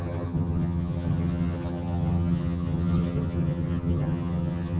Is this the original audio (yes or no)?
no